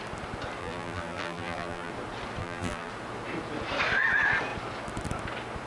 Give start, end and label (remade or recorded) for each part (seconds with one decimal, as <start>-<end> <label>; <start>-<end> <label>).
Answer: 0.0-0.6 recorded; 0.6-1.9 remade; 1.9-2.4 recorded; 2.4-2.9 remade; 2.9-5.7 recorded